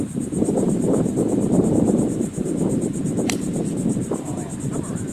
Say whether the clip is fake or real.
fake